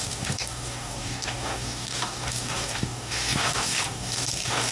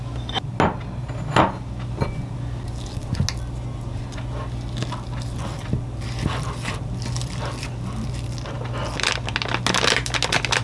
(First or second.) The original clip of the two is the second